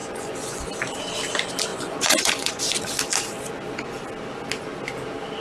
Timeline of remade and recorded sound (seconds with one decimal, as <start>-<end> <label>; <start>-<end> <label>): 0.0-0.6 remade; 0.6-1.7 recorded; 1.7-2.6 remade; 2.6-5.4 recorded